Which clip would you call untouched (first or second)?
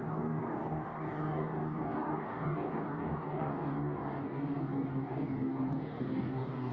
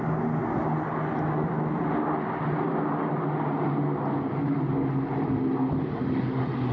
second